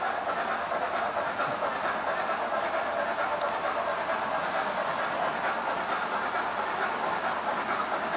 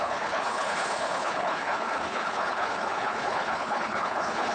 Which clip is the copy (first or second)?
second